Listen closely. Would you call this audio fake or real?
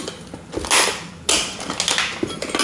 real